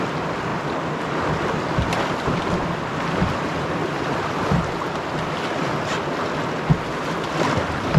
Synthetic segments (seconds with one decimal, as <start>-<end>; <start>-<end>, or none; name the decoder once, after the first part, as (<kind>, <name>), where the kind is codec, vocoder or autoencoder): 0.5-2.8 (vocoder, BigVGAN v2); 3.8-4.7